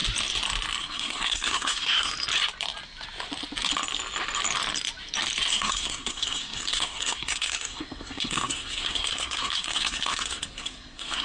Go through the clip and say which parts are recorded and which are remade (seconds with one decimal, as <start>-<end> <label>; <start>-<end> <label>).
0.0-0.8 recorded; 0.8-2.1 remade; 2.1-5.5 recorded; 5.5-11.2 remade